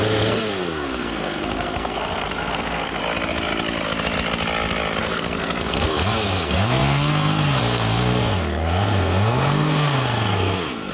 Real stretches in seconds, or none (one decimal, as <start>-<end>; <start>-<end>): 3.0-5.0